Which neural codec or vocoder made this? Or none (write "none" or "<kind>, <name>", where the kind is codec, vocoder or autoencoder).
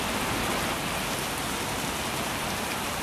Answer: none